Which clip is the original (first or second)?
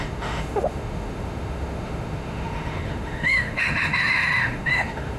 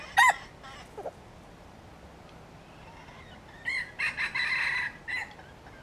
second